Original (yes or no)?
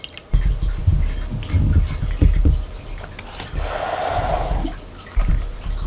yes